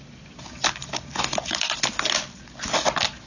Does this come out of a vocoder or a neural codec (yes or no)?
no